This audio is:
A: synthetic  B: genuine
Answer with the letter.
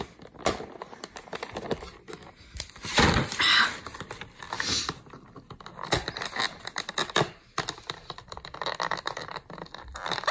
B